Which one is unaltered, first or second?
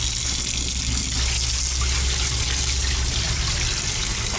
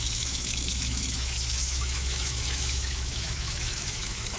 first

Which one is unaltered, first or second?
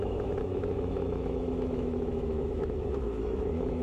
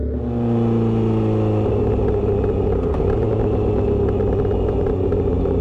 second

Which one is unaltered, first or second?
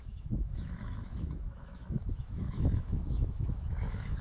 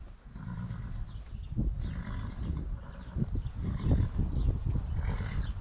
second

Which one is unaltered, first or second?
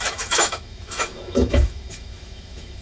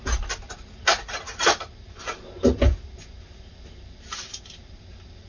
second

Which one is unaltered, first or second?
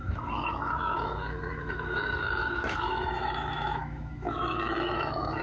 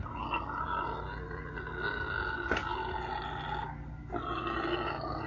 second